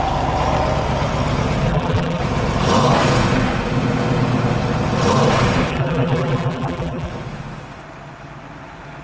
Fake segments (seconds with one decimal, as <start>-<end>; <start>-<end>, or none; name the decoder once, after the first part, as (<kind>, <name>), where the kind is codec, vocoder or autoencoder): 1.7-2.2 (vocoder, BigVGAN v2); 5.7-7.1